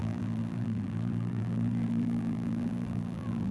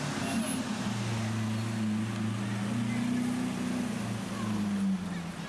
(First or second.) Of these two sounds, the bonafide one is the second